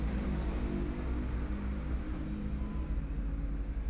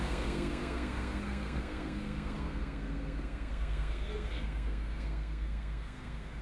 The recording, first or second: first